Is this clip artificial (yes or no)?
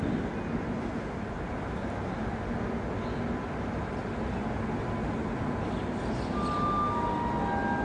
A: no